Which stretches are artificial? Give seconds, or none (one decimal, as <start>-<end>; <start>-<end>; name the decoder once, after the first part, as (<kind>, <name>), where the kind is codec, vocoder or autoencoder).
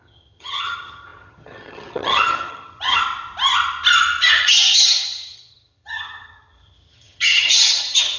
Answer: 0.0-3.0 (vocoder, HiFi-GAN); 4.3-8.2